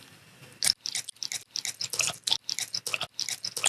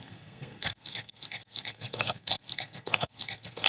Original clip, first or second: first